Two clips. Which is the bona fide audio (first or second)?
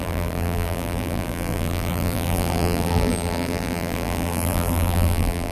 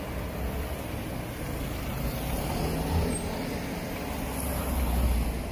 second